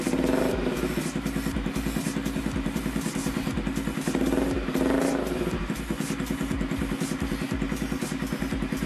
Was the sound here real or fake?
real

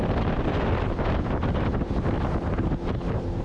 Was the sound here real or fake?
real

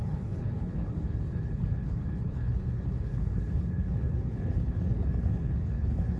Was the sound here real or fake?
fake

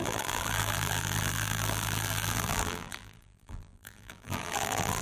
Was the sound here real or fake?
fake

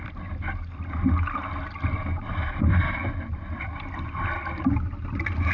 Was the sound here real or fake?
real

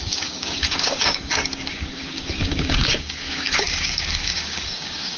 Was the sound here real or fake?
fake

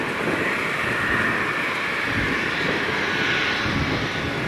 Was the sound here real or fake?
real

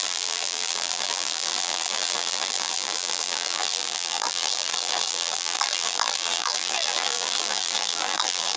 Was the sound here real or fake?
fake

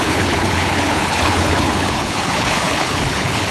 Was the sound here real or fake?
fake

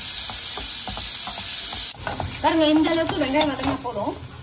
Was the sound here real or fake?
real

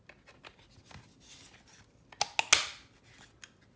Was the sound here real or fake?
real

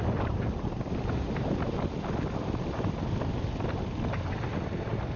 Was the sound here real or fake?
real